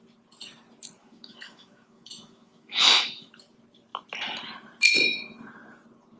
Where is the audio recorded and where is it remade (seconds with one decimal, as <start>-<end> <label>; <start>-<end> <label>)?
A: 0.0-1.0 recorded; 1.0-3.3 remade; 3.3-6.2 recorded